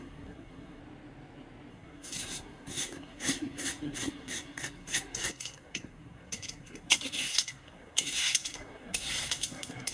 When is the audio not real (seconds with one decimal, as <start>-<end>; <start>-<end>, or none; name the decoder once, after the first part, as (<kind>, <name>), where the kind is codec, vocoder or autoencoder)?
0.0-0.8 (codec, SNAC); 1.7-9.9